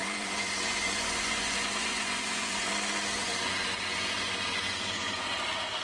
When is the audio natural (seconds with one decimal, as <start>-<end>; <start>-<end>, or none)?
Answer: 2.7-3.2; 5.3-5.8